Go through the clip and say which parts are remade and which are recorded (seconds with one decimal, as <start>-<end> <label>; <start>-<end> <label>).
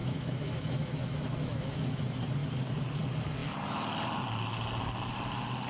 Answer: 0.0-2.0 remade; 2.0-5.7 recorded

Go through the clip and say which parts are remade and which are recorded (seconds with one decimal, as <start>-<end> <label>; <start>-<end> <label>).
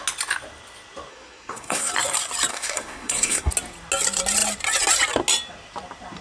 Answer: 0.0-1.1 recorded; 1.1-1.9 remade; 1.9-2.5 recorded; 2.5-3.5 remade; 3.5-6.2 recorded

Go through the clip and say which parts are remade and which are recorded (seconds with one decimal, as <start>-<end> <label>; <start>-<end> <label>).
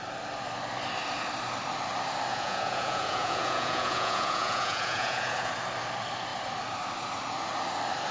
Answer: 0.0-2.3 recorded; 2.3-5.5 remade; 5.5-8.1 recorded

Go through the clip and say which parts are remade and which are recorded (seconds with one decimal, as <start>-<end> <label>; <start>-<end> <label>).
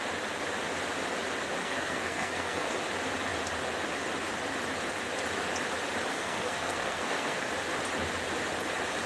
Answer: 0.0-1.6 recorded; 1.6-2.7 remade; 2.7-6.1 recorded; 6.1-7.5 remade; 7.5-9.1 recorded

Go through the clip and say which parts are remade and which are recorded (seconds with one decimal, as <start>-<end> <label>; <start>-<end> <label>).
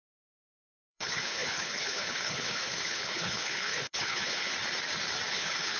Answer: 0.0-4.5 remade; 4.5-5.3 recorded; 5.3-5.8 remade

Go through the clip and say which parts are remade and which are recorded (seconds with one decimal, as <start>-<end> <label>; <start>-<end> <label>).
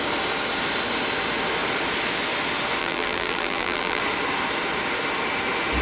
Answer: 0.0-2.8 recorded; 2.8-4.0 remade; 4.0-5.8 recorded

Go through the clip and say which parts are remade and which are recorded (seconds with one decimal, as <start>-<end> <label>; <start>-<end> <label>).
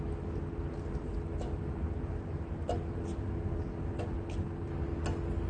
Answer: 0.0-5.5 recorded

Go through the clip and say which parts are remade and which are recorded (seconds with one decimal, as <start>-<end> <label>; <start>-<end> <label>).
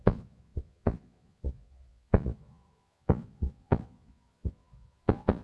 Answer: 0.0-5.4 remade